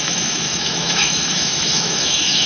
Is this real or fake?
fake